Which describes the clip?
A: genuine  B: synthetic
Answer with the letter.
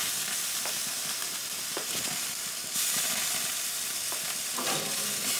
A